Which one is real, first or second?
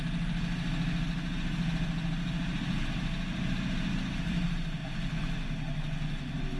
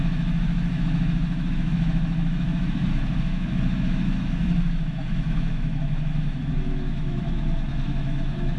first